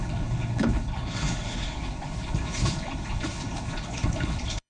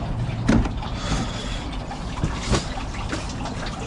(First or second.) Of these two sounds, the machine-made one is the first